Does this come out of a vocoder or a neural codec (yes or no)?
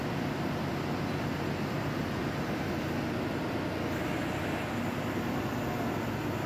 no